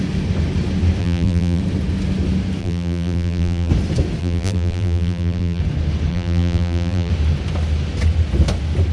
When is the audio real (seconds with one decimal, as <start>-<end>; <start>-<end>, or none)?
0.0-1.0; 1.6-2.6; 3.7-4.2; 5.6-6.1; 7.1-8.9